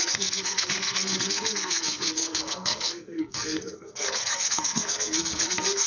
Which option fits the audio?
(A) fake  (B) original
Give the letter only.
A